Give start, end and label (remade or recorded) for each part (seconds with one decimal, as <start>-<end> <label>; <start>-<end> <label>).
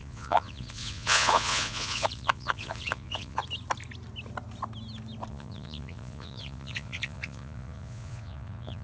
0.0-3.4 remade; 3.4-5.3 recorded; 5.3-8.8 remade